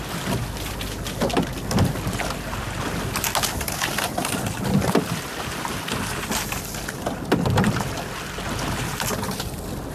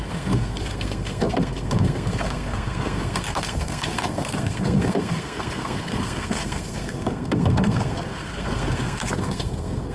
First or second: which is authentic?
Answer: first